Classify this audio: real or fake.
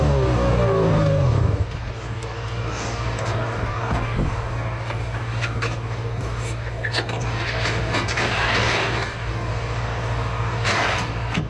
fake